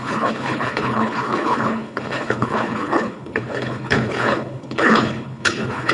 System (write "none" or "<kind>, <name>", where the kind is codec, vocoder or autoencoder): codec, HILCodec